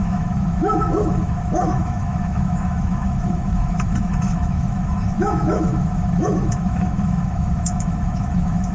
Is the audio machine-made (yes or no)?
yes